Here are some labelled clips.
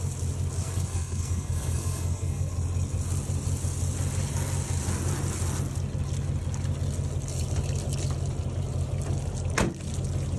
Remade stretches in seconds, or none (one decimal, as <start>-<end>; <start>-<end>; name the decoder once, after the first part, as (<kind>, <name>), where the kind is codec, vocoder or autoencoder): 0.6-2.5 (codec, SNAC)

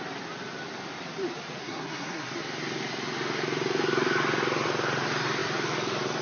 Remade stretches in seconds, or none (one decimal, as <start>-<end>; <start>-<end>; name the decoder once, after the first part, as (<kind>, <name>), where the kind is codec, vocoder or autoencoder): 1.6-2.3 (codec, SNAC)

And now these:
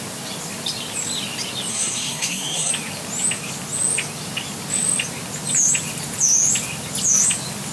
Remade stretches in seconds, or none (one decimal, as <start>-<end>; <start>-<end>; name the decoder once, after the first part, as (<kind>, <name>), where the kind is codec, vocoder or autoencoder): 1.7-2.7 (codec, SNAC)